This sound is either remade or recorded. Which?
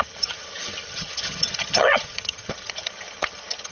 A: remade